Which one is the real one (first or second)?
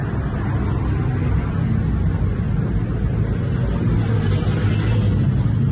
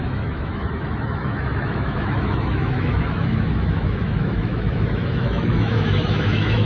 first